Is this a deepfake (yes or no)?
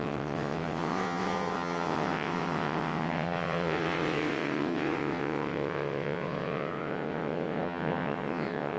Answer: yes